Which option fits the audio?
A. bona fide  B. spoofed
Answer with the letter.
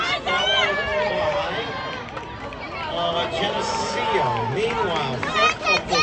A